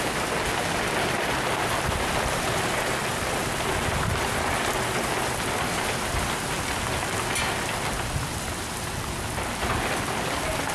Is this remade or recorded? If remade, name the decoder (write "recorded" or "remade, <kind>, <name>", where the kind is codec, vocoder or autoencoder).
recorded